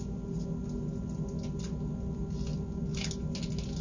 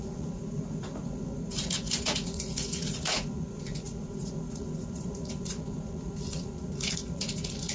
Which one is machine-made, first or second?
second